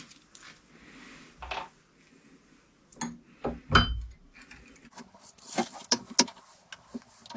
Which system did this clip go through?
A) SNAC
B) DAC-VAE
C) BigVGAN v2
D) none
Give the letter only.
D